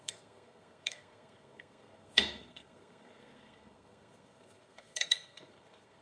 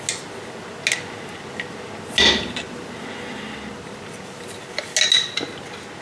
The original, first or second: second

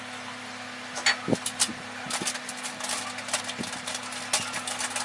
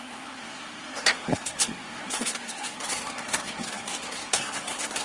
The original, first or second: first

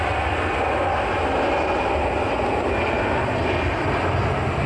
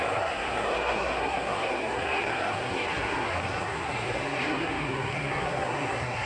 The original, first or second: first